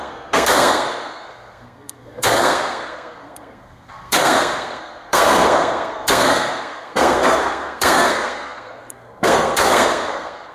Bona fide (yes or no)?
no